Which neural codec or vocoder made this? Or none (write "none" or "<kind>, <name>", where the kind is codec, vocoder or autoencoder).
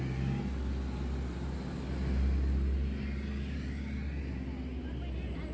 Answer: none